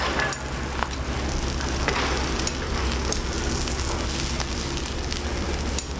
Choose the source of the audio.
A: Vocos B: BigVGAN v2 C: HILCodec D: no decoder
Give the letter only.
D